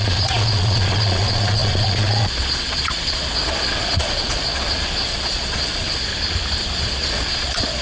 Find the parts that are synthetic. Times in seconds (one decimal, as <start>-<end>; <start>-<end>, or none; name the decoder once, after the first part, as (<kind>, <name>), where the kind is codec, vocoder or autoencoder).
0.0-6.1 (vocoder, Vocos); 6.8-7.8